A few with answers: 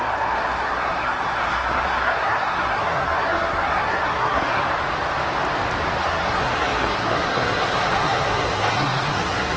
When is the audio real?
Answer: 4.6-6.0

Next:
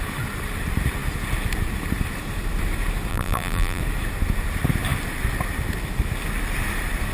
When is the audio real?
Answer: 0.0-3.1; 3.8-7.1

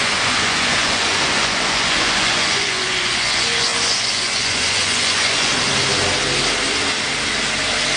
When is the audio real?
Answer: 5.5-8.0

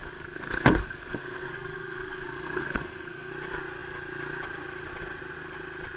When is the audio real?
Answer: 3.3-6.0